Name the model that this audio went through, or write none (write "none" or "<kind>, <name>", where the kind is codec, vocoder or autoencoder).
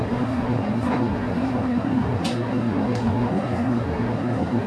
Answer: codec, SNAC